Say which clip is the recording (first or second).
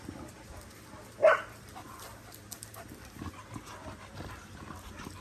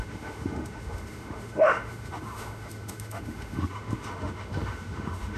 first